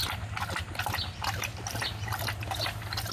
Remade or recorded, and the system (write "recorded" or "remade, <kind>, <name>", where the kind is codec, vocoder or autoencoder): recorded